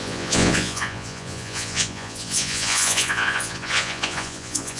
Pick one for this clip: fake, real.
fake